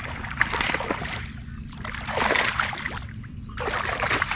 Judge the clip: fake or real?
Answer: real